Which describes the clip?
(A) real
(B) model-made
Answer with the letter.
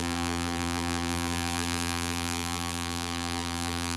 B